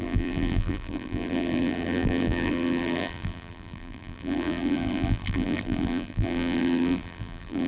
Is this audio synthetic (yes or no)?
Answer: yes